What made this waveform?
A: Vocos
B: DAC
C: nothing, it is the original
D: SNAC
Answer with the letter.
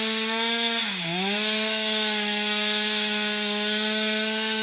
B